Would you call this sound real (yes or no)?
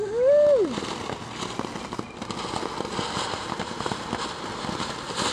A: yes